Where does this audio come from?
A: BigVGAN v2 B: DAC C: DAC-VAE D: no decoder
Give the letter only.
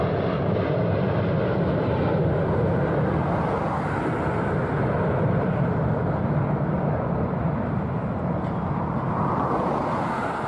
D